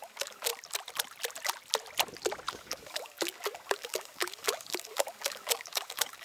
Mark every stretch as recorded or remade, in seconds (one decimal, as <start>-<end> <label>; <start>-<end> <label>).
0.0-0.5 remade; 0.5-2.5 recorded; 2.5-6.2 remade